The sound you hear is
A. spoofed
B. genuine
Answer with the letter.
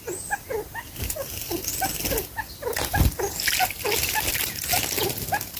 B